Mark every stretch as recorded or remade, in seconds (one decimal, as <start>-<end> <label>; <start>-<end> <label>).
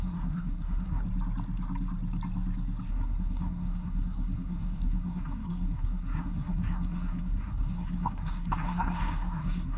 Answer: 0.0-1.0 remade; 1.0-2.9 recorded; 2.9-9.8 remade